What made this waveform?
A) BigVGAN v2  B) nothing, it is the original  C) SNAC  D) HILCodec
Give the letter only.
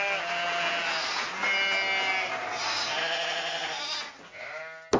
B